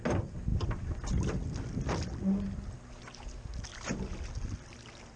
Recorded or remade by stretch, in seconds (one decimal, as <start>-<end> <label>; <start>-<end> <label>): 0.0-5.2 recorded